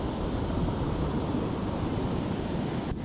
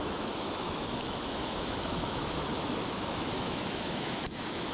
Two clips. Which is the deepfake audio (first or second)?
second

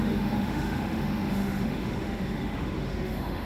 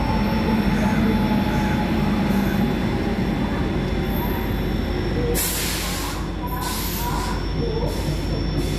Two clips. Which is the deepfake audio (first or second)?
first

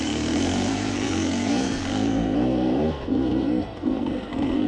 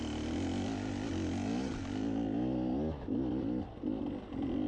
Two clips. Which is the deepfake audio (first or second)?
first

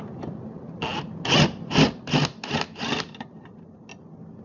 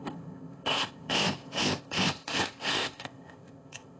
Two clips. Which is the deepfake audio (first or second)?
second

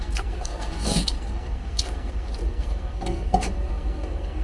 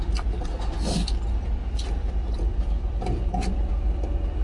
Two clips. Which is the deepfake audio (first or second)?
first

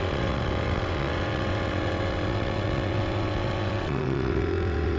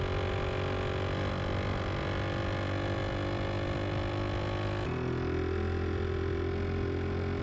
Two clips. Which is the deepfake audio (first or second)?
first